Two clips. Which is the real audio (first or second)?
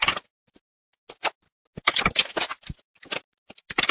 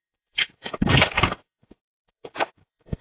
first